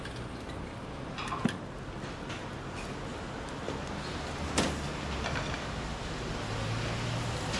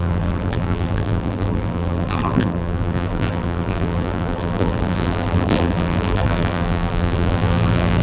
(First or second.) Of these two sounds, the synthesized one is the second